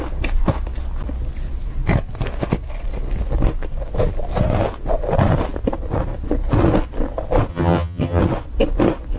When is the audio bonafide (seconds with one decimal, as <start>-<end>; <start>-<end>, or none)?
0.0-7.5; 8.2-9.2